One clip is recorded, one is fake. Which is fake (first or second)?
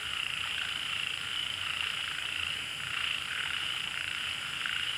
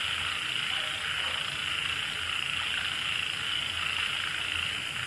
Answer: first